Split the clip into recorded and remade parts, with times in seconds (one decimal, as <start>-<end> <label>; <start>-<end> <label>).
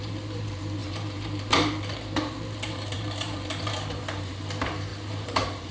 0.0-5.7 remade